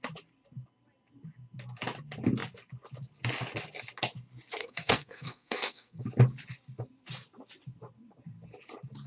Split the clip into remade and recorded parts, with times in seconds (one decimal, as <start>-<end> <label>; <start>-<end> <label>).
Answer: 0.0-4.6 recorded; 4.6-6.0 remade; 6.0-9.1 recorded